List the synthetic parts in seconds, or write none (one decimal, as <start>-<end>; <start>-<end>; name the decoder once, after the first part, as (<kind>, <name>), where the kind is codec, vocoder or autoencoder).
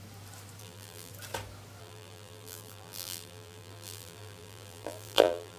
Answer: 0.6-1.1 (vocoder, BigVGAN v2); 1.8-5.6